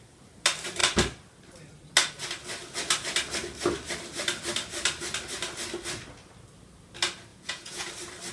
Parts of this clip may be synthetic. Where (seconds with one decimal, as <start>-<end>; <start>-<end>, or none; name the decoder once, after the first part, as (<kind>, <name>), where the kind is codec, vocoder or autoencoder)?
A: 7.3-7.9 (vocoder, Vocos)